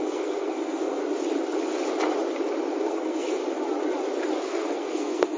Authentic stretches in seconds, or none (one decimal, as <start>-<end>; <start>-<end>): 1.0-2.8; 3.4-4.4